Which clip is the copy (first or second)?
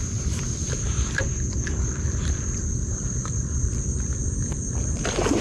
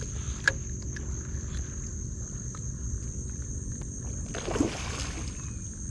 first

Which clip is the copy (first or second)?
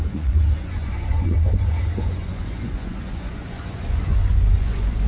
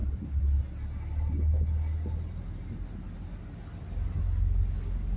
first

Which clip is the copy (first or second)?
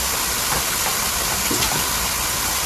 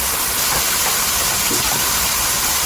second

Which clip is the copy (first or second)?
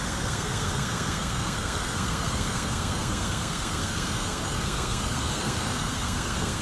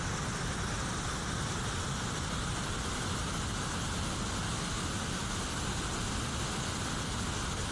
first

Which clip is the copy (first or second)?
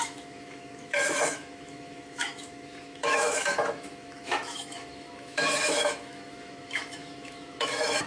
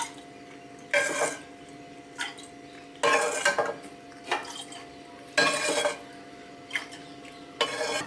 first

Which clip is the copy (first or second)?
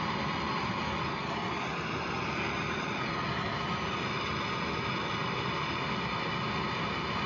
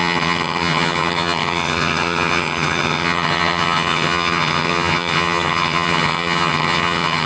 second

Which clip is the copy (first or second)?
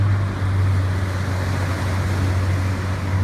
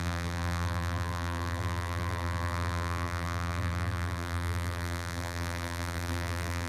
second